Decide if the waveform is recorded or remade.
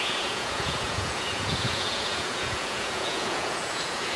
remade